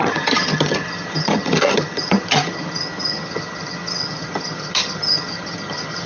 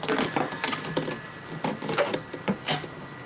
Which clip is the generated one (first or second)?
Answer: first